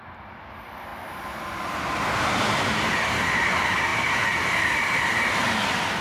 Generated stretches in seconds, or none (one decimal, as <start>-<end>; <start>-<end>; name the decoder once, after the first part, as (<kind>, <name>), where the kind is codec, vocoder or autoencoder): none